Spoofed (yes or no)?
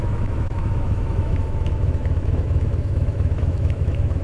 yes